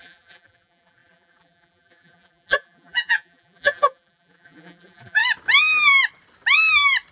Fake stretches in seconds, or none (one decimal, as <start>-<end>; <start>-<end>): 0.0-5.2